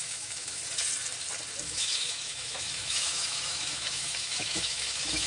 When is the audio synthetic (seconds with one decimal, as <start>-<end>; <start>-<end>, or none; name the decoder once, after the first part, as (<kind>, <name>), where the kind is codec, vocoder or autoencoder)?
0.0-0.6 (autoencoder, DAC-VAE); 1.6-5.3